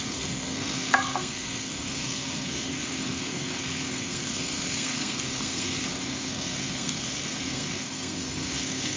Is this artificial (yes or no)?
yes